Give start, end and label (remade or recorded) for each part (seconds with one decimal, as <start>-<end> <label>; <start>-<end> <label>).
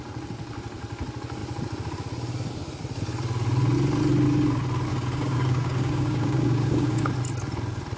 0.0-4.9 recorded; 4.9-7.0 remade; 7.0-8.0 recorded